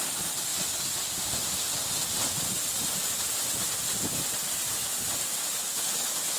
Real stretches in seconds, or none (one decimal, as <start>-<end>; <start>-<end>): 0.5-4.3; 4.8-5.4